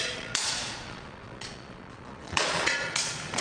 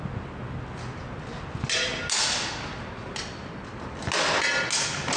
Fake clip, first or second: first